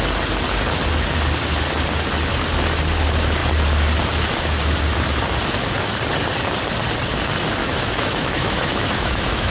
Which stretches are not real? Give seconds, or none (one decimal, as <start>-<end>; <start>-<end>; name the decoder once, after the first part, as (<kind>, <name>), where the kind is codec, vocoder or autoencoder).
7.6-9.5 (autoencoder, DAC-VAE)